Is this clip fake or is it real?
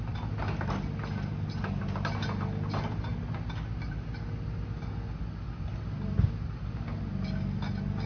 real